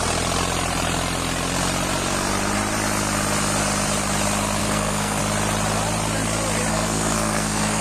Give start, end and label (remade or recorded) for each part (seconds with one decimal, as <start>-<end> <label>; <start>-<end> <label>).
0.0-4.6 recorded; 4.6-5.2 remade; 5.2-6.7 recorded; 6.7-7.8 remade